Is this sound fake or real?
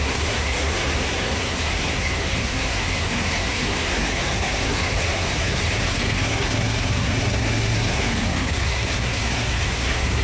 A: fake